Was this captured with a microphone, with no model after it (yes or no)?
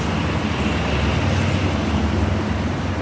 yes